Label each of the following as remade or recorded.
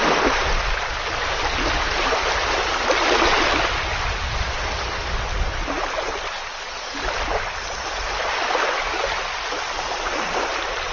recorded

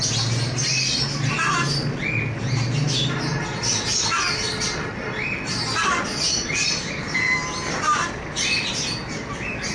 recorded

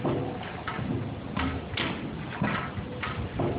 recorded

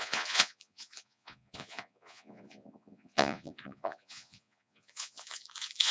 remade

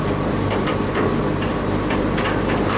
recorded